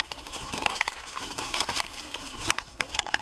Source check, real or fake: fake